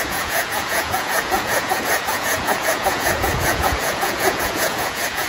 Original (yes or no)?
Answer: no